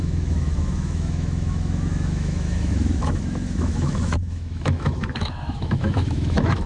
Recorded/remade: remade